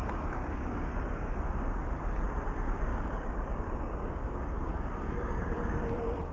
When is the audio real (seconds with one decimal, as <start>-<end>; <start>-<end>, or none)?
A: 1.9-2.9; 5.6-6.3

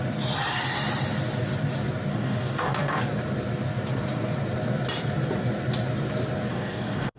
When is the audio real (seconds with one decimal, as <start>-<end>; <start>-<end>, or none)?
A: 0.0-2.1; 3.0-6.5

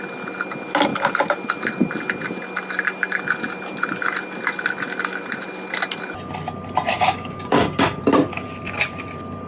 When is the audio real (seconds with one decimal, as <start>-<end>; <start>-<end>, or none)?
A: 0.0-6.9; 8.0-9.5